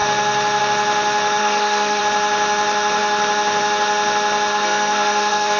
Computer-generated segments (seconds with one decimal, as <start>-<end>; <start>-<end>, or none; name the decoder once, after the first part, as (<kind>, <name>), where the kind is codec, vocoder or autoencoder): 1.4-2.0 (codec, SNAC); 4.5-5.6